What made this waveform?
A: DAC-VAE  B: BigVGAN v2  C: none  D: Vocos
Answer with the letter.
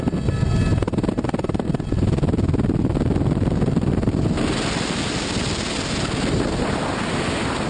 C